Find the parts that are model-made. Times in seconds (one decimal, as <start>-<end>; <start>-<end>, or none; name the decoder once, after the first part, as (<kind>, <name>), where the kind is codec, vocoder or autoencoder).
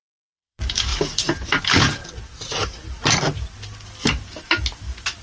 0.0-2.0 (vocoder, BigVGAN v2); 4.1-5.2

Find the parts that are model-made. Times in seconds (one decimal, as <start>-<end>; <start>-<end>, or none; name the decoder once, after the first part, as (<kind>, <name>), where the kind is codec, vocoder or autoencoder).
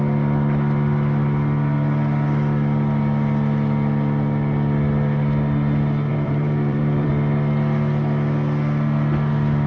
6.1-7.1 (vocoder, BigVGAN v2)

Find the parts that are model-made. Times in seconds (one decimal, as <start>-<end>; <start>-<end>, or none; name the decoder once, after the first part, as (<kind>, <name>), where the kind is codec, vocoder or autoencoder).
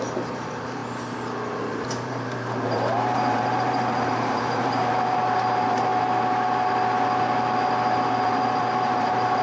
0.0-0.8 (vocoder, BigVGAN v2); 1.6-5.9; 8.2-9.4